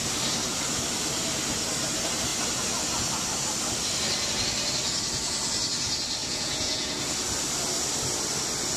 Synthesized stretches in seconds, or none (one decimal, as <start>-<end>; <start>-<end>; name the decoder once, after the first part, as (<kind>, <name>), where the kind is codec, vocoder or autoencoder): 6.2-7.0 (vocoder, Vocos)